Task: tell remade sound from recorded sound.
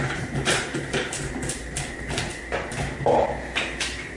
remade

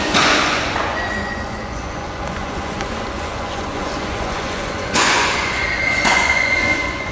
remade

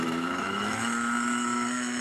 remade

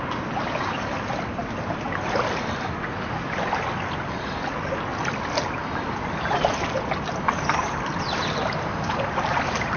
recorded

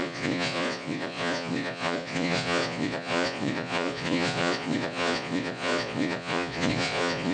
remade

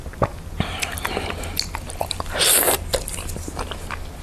recorded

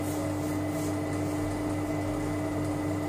remade